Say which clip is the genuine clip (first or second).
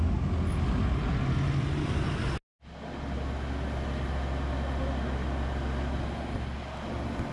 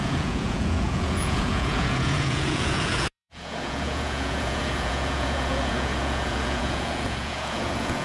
first